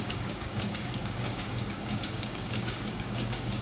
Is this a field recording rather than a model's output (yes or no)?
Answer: no